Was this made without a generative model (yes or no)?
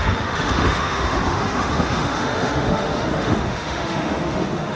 no